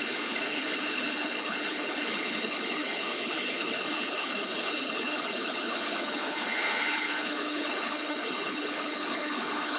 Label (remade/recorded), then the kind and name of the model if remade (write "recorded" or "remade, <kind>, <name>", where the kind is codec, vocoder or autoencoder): remade, codec, HILCodec